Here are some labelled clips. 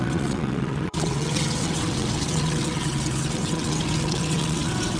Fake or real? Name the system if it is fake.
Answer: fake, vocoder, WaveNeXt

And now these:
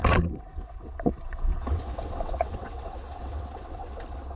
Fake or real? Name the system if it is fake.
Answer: fake, vocoder, WaveNeXt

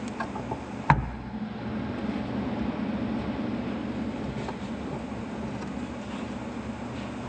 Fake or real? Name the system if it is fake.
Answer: real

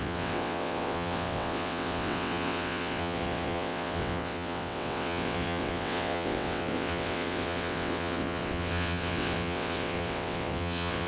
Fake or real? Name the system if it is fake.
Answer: fake, vocoder, WaveNeXt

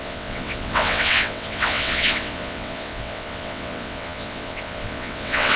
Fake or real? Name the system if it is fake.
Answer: fake, vocoder, WaveNeXt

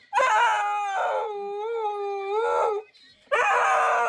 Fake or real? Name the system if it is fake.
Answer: real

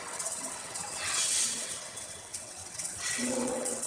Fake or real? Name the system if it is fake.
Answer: fake, vocoder, WaveNeXt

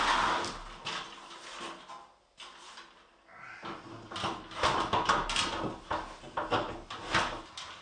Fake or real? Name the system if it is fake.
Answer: real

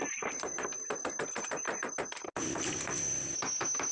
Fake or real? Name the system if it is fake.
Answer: real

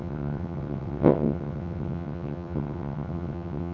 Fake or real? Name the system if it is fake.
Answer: fake, vocoder, WaveNeXt